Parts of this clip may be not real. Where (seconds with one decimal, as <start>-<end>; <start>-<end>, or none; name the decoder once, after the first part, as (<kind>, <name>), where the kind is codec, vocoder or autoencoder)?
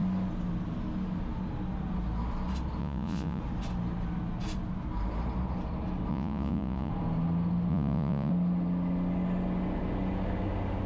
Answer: 2.8-3.4 (vocoder, Vocos); 6.1-6.9; 7.7-8.3